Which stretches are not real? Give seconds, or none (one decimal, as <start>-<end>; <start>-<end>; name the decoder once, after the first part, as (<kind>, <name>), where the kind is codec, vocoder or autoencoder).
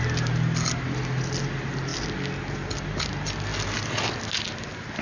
none